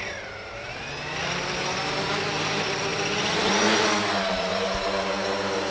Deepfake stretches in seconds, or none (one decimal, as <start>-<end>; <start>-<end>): none